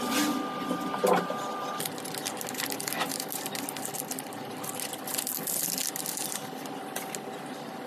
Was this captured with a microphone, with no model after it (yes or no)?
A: yes